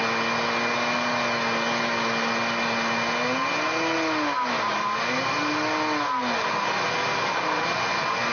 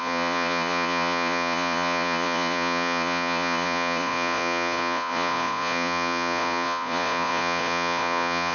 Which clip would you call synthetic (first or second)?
second